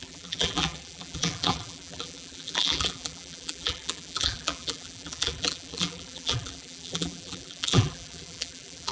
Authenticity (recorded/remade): remade